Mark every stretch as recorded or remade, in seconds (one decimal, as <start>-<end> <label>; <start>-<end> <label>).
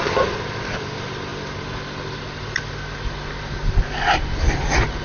0.0-5.0 recorded